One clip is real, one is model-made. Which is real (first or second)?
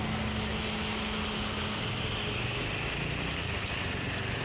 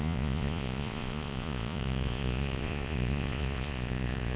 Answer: first